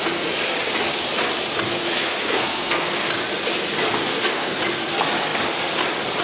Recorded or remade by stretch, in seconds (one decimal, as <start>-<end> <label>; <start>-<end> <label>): 0.0-1.7 recorded; 1.7-3.1 remade; 3.1-4.1 recorded; 4.1-4.6 remade; 4.6-6.2 recorded